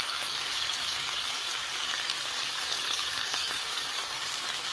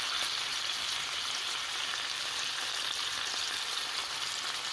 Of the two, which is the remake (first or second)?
first